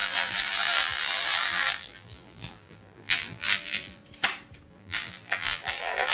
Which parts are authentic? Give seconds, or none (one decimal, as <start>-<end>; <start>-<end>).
4.0-4.7